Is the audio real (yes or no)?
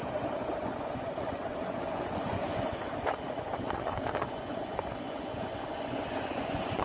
no